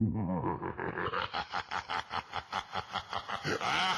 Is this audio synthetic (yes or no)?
no